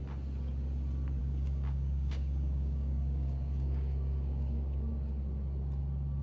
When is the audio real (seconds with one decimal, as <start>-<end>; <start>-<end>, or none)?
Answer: 0.0-1.2; 4.9-6.2